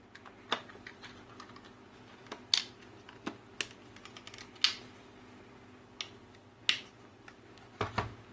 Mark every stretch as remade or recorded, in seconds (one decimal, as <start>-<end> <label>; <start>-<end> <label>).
0.0-8.3 recorded